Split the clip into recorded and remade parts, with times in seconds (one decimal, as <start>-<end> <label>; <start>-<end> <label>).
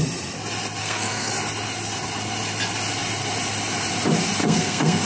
0.0-0.8 recorded; 0.8-1.3 remade; 1.3-4.4 recorded; 4.4-5.1 remade